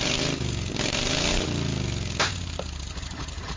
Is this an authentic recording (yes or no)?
yes